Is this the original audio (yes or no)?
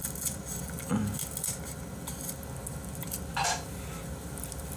yes